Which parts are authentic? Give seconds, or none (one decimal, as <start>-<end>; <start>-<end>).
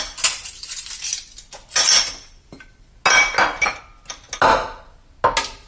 0.0-5.7